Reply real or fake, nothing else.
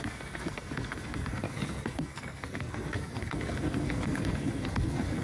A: fake